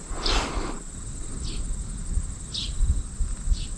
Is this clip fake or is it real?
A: real